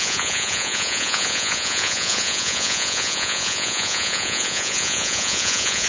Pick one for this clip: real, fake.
fake